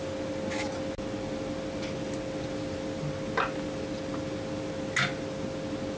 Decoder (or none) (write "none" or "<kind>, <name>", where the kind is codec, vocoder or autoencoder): none